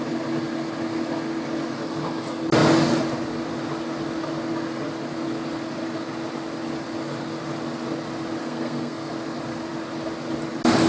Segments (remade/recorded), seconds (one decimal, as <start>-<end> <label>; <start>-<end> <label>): 0.0-8.4 recorded; 8.4-9.1 remade; 9.1-10.9 recorded